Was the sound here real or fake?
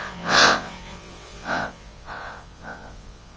fake